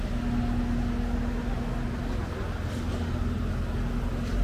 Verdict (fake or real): real